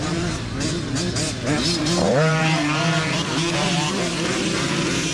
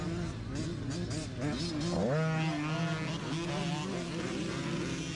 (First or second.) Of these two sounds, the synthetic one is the first